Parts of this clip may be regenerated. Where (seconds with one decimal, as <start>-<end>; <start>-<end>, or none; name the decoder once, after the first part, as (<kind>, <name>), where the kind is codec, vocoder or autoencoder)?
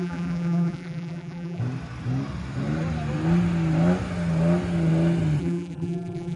0.0-1.6 (vocoder, BigVGAN v2); 5.4-6.4